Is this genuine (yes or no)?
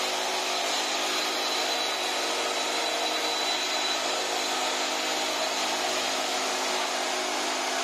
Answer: yes